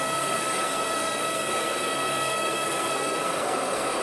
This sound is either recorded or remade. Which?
remade